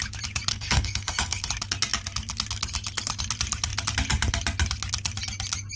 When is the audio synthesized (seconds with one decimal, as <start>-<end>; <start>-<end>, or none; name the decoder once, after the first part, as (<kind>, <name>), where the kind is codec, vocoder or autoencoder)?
0.5-1.5 (codec, SNAC)